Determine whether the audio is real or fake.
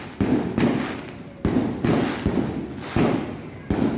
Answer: real